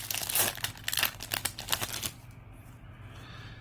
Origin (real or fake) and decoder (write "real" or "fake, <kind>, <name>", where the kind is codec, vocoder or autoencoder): real